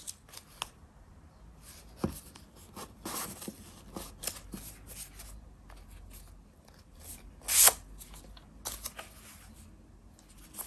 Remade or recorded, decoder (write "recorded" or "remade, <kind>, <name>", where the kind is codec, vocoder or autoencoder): recorded